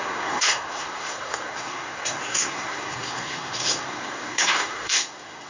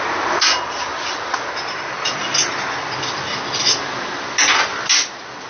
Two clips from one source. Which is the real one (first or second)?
second